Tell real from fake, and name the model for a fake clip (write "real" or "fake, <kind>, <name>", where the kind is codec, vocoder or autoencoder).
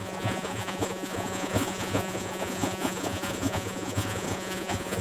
fake, vocoder, Vocos